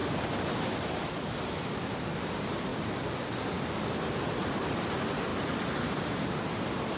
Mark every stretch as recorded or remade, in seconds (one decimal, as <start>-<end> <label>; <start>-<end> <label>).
0.0-0.7 remade; 0.7-2.7 recorded; 2.7-4.8 remade; 4.8-7.0 recorded